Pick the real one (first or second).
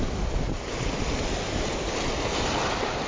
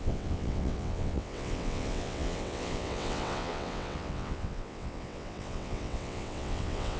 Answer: first